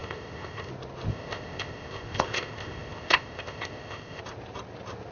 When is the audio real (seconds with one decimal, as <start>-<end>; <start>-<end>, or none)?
0.7-1.1; 4.2-5.1